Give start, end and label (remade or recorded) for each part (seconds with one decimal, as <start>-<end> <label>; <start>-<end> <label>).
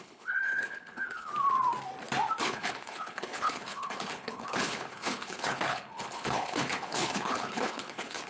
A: 0.0-1.3 remade; 1.3-2.4 recorded; 2.4-8.3 remade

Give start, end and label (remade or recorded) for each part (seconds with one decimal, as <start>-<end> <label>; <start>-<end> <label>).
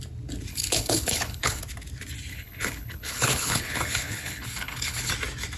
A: 0.0-0.5 recorded; 0.5-1.6 remade; 1.6-2.3 recorded; 2.3-5.1 remade; 5.1-5.6 recorded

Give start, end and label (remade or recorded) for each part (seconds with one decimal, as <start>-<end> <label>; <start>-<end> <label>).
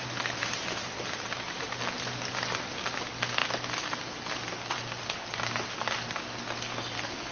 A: 0.0-7.3 recorded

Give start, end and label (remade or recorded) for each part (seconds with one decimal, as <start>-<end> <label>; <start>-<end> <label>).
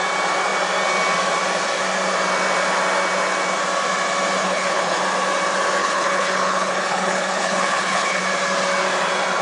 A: 0.0-4.4 recorded; 4.4-5.0 remade; 5.0-5.8 recorded; 5.8-8.2 remade; 8.2-9.4 recorded